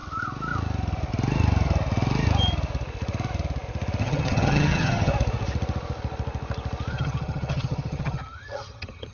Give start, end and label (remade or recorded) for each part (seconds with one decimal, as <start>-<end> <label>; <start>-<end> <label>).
0.0-4.0 recorded; 4.0-5.1 remade; 5.1-6.9 recorded; 6.9-9.1 remade